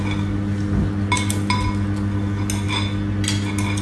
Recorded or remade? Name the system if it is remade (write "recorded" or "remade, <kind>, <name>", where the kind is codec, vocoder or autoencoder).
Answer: recorded